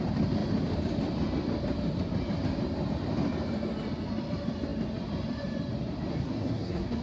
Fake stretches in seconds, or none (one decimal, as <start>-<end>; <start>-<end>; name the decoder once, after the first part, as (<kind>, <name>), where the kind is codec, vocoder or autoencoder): 6.1-7.0 (codec, SNAC)